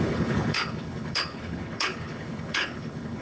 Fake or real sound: fake